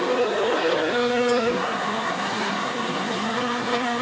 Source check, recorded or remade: remade